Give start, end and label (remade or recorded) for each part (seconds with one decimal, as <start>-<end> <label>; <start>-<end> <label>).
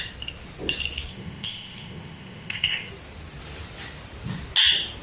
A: 0.0-1.1 recorded; 1.1-2.9 remade; 2.9-5.0 recorded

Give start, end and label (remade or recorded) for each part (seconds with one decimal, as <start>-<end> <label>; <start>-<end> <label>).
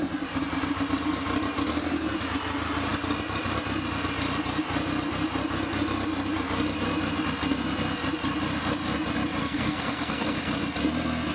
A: 0.0-9.4 recorded; 9.4-10.5 remade; 10.5-11.3 recorded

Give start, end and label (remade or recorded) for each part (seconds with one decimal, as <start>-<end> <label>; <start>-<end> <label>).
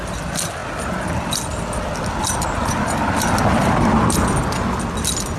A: 0.0-5.4 recorded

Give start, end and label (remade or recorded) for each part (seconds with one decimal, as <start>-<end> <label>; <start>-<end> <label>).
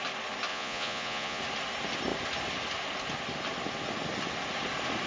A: 0.0-0.5 recorded; 0.5-1.4 remade; 1.4-5.1 recorded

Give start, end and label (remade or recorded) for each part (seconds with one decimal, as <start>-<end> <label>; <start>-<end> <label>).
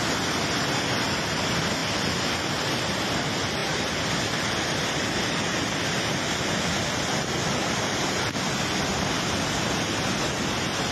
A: 0.0-10.9 recorded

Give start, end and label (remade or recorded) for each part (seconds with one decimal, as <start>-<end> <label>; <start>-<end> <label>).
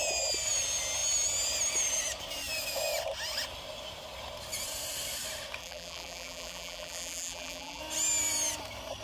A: 0.0-5.6 recorded; 5.6-7.8 remade; 7.8-9.0 recorded